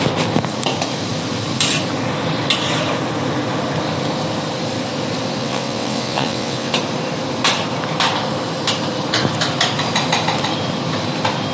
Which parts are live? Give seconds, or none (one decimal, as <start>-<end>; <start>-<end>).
0.0-5.4; 6.7-11.5